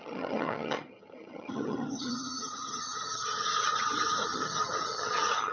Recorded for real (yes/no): no